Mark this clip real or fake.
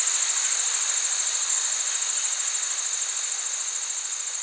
real